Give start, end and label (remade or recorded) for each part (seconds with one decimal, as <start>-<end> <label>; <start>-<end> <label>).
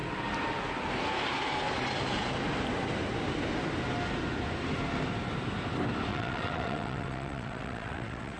0.0-6.1 recorded; 6.1-8.4 remade